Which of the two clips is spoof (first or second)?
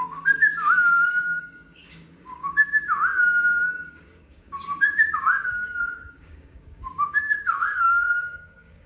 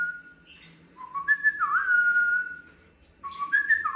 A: first